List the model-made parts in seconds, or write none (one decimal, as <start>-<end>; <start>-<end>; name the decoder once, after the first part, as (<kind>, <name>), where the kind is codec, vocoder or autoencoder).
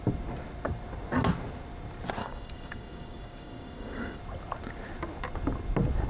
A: 2.2-4.2 (codec, DAC)